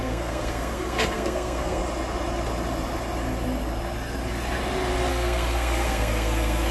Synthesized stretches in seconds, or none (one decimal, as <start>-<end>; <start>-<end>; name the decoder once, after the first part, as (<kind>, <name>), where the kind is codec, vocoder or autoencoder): 0.0-1.8 (codec, SNAC); 5.1-6.7